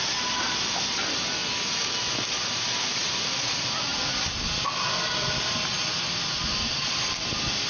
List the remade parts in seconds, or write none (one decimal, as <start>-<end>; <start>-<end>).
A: 0.0-1.4; 2.9-3.9